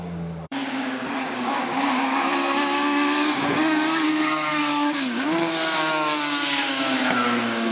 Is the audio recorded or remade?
remade